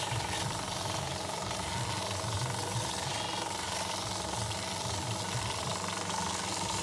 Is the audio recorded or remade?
recorded